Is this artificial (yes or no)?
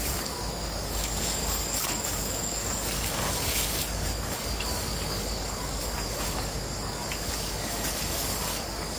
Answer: yes